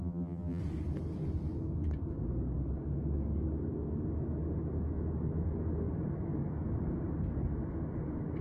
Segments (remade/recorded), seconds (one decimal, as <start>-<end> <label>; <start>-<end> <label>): 0.0-0.6 remade; 0.6-8.4 recorded